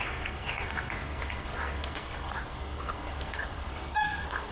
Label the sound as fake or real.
fake